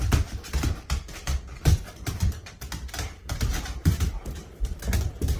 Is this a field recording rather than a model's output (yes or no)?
yes